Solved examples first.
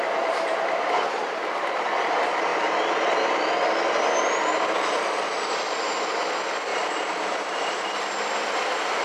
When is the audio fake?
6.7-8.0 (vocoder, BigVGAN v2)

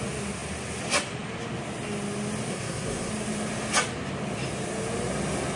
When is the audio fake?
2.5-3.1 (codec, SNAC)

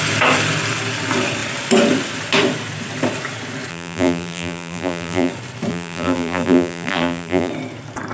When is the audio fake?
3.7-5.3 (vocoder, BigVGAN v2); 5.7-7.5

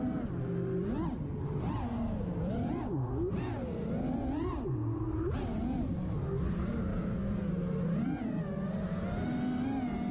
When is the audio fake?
none

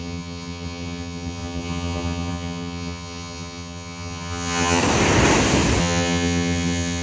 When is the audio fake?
0.0-4.8 (vocoder, HiFi-GAN); 5.8-7.0

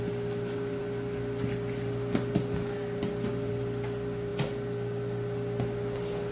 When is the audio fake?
none